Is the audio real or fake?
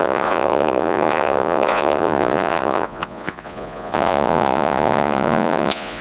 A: fake